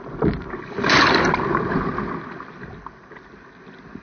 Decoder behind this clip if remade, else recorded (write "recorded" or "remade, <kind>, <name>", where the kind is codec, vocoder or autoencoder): recorded